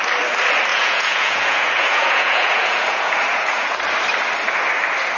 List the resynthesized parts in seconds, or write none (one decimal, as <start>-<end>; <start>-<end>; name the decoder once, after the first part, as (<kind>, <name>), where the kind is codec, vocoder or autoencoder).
0.7-3.8 (vocoder, Vocos)